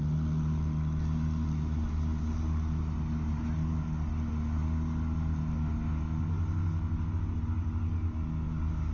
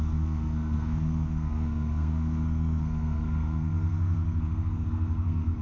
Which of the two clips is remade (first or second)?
second